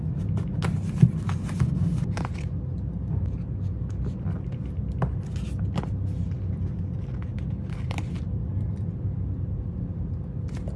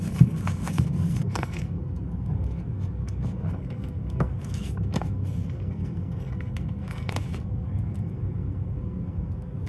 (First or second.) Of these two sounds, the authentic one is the first